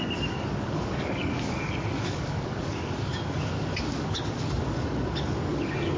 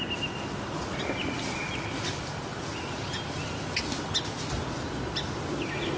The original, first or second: second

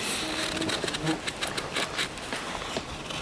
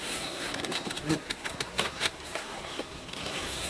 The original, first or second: first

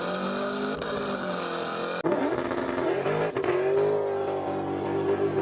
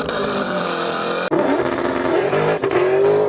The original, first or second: first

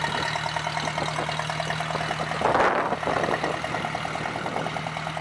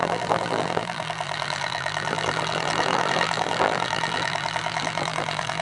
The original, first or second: first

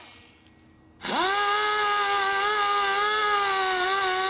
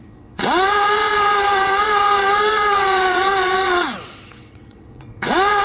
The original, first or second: first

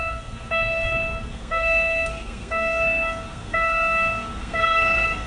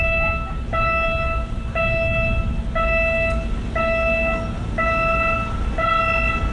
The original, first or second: second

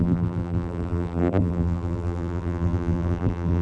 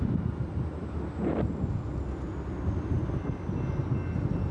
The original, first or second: second